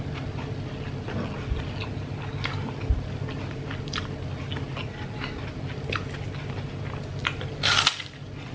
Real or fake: real